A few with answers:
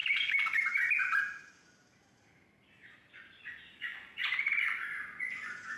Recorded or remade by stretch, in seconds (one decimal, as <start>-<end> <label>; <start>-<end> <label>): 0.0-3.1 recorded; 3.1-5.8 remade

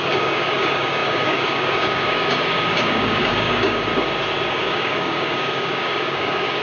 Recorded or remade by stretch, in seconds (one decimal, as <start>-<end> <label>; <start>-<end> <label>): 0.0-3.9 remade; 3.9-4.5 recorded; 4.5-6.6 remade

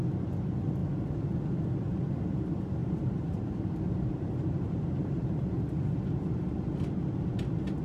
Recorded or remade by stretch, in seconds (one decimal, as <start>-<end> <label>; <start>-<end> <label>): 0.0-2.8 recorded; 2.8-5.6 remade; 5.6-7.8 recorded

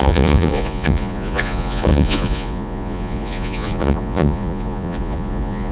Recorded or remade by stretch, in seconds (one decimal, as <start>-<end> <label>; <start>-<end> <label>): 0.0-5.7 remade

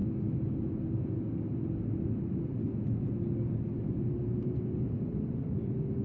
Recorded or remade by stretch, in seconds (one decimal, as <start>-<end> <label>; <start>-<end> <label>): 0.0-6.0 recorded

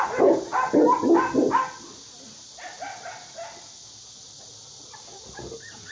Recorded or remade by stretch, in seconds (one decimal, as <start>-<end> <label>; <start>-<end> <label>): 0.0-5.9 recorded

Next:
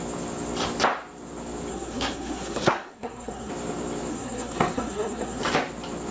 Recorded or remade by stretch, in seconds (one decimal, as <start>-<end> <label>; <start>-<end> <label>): 0.0-1.7 recorded; 1.7-3.5 remade; 3.5-4.1 recorded; 4.1-5.4 remade; 5.4-6.1 recorded